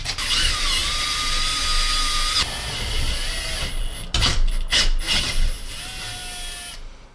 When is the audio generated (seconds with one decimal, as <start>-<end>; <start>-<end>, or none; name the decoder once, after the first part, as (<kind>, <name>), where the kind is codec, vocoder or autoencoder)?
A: none